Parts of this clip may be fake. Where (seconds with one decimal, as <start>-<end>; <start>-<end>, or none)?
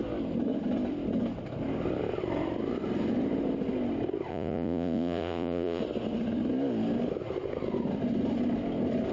4.3-5.8